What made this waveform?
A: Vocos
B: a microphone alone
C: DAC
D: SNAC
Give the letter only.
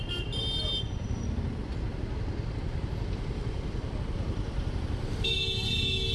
B